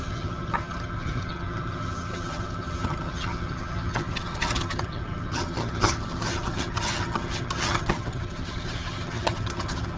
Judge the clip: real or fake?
fake